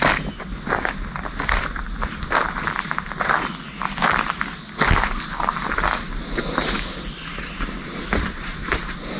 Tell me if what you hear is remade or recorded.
recorded